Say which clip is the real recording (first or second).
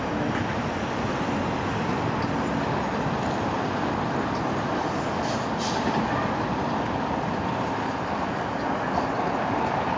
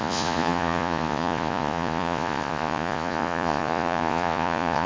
first